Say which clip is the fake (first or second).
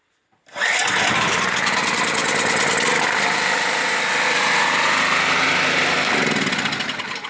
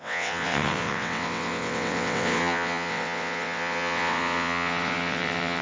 second